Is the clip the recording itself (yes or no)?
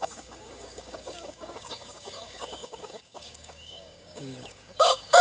no